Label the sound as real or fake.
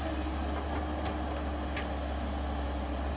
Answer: real